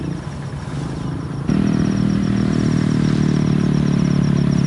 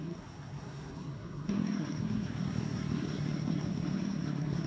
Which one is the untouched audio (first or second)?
first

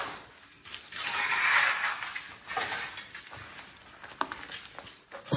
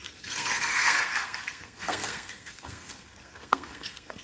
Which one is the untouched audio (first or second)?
first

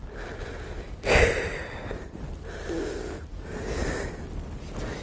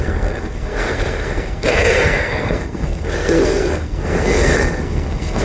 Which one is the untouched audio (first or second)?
first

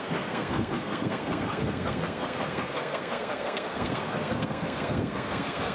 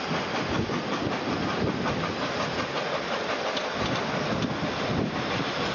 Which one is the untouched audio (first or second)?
second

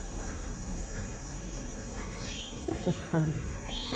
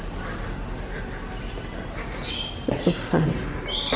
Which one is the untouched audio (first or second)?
second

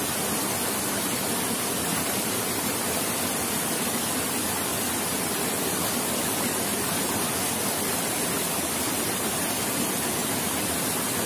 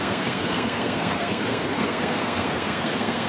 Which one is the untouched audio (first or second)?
first